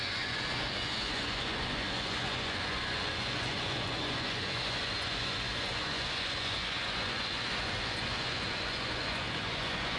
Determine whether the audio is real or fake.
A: fake